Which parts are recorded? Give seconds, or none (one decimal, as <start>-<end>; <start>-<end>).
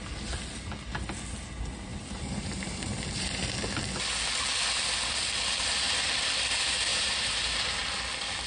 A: 0.0-1.9; 3.5-6.9; 7.8-8.5